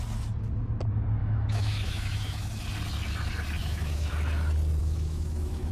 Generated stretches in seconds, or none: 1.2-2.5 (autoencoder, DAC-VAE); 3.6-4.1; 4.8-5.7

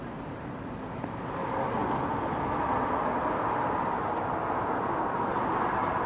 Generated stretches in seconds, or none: none

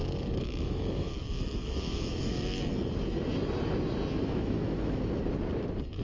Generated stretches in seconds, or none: 0.0-2.7 (autoencoder, DAC-VAE); 4.2-5.0

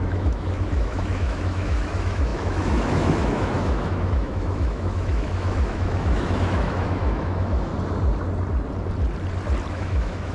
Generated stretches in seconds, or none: 0.0-7.7 (autoencoder, DAC-VAE); 9.7-10.3

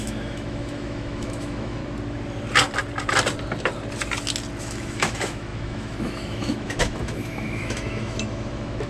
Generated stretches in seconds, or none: 0.0-1.8 (autoencoder, DAC-VAE); 4.6-8.9